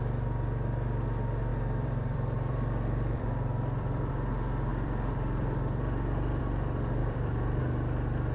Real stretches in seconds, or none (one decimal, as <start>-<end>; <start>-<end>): 0.0-1.5; 4.1-4.7; 6.4-7.0; 7.6-8.3

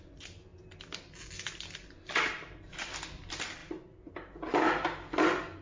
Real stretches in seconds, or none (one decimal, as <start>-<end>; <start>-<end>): 0.0-5.6